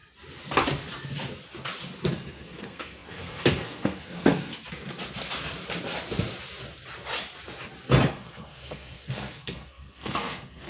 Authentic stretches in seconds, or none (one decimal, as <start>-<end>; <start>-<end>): 0.0-2.1; 4.5-8.1